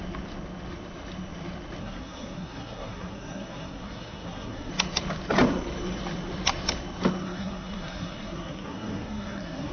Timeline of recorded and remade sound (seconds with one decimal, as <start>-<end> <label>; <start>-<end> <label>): 0.0-1.8 recorded; 1.8-4.7 remade; 4.7-7.2 recorded; 7.2-9.7 remade